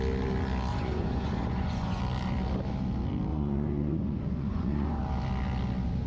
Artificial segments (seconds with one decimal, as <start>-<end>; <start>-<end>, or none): 0.7-2.0; 3.3-5.0